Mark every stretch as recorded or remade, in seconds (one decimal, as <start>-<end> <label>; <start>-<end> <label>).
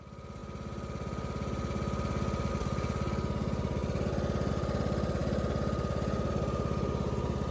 0.0-7.5 recorded